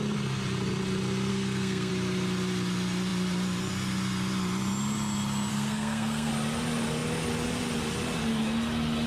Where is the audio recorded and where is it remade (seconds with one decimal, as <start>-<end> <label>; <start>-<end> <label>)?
0.0-1.3 recorded; 1.3-1.9 remade; 1.9-5.5 recorded; 5.5-6.3 remade; 6.3-9.1 recorded